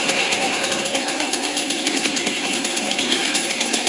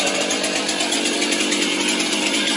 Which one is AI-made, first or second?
first